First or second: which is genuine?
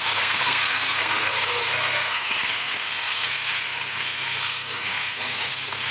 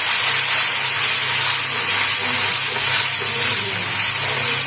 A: second